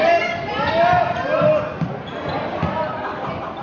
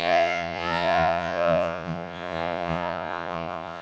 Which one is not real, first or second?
second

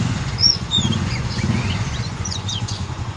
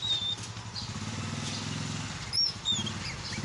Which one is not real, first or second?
first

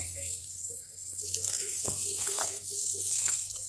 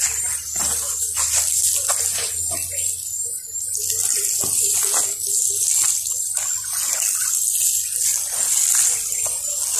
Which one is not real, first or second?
first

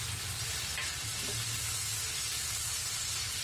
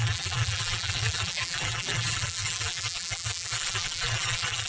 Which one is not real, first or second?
second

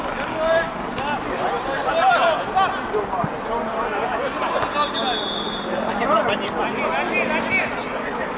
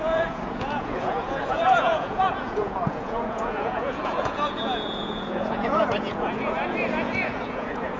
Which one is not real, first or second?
second